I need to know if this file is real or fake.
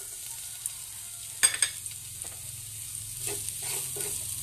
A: real